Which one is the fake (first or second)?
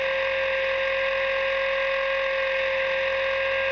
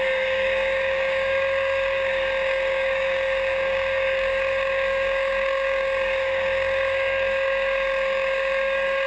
second